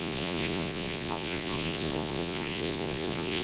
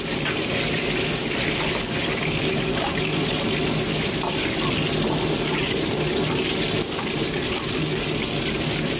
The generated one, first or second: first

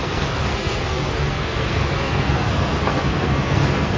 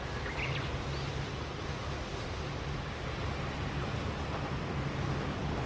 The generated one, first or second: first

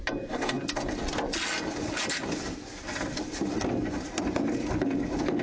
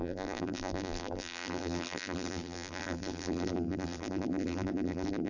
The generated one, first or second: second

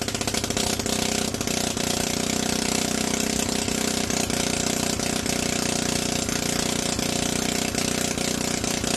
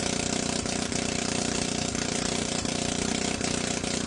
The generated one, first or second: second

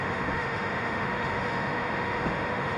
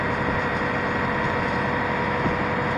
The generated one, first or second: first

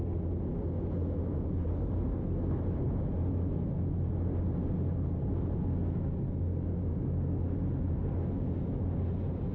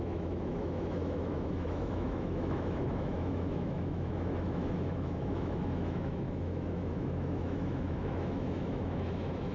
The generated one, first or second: second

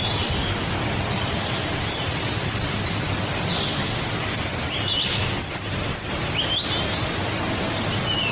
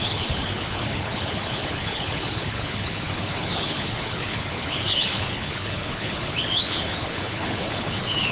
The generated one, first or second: second